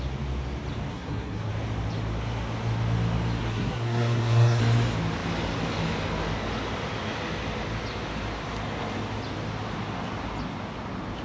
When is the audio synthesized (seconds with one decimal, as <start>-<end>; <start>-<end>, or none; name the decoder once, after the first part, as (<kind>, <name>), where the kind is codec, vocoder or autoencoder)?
0.9-1.5 (codec, SNAC); 3.4-4.6